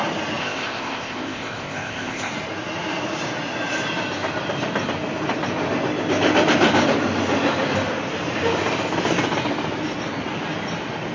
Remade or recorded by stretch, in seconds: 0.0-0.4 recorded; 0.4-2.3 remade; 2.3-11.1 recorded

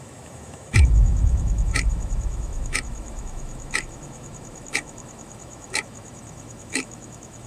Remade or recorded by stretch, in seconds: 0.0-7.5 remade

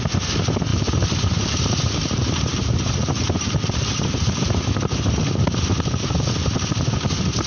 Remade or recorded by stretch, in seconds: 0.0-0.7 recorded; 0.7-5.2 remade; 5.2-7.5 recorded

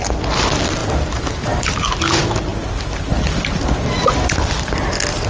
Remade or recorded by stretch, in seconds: 0.0-0.8 recorded; 0.8-2.0 remade; 2.0-5.3 recorded